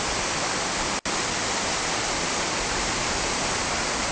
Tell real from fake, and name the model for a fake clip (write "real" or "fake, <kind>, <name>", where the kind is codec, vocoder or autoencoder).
real